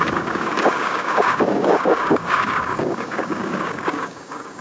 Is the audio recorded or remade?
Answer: remade